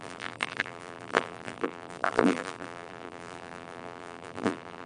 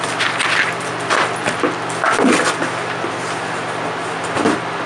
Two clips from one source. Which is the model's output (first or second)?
first